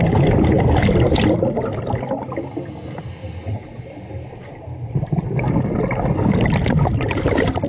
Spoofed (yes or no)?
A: no